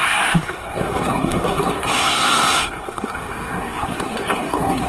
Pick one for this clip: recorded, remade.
remade